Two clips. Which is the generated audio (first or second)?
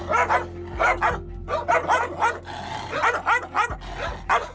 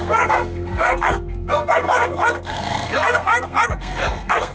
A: second